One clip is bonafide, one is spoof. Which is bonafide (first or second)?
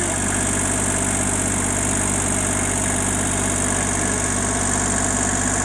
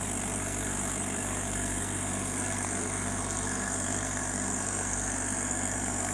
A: first